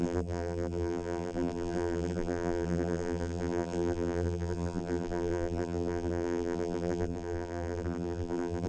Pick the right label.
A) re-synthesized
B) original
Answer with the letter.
A